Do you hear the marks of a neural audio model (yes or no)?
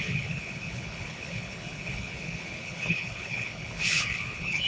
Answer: yes